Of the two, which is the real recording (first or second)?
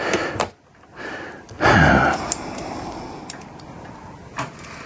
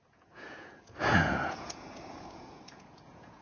first